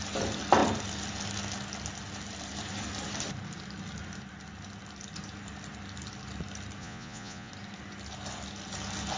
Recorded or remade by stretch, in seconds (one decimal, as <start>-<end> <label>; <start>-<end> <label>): 0.0-6.8 recorded; 6.8-7.5 remade; 7.5-9.2 recorded